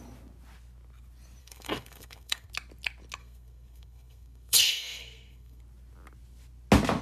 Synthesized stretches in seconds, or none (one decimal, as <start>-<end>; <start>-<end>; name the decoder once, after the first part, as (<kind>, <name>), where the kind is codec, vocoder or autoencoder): 1.4-2.5 (codec, SNAC); 3.2-5.6